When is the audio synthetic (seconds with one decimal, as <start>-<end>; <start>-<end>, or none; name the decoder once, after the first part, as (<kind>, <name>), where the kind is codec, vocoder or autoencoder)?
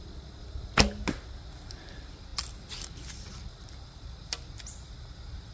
none